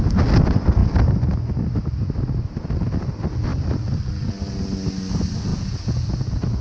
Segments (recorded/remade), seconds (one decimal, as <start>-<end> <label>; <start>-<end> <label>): 0.0-5.5 recorded; 5.5-6.1 remade; 6.1-6.6 recorded